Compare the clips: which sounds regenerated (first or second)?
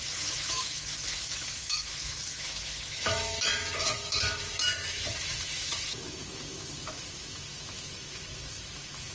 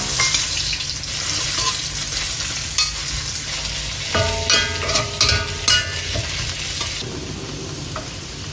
first